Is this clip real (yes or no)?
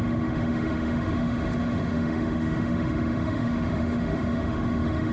no